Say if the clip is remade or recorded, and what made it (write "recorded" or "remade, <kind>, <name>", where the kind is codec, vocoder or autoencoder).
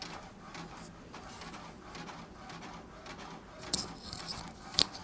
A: recorded